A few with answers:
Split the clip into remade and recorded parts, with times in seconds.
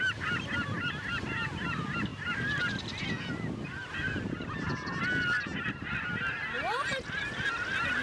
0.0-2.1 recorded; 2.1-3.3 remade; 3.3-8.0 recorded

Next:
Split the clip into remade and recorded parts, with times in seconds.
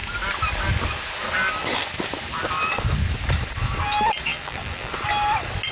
0.0-4.3 recorded; 4.3-4.9 remade; 4.9-5.7 recorded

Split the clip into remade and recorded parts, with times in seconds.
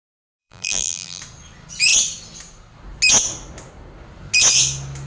0.0-0.4 recorded; 0.4-1.2 remade; 1.2-5.1 recorded